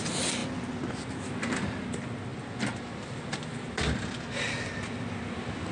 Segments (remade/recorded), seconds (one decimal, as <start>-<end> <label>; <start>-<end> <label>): 0.0-2.3 recorded; 2.3-4.2 remade; 4.2-5.7 recorded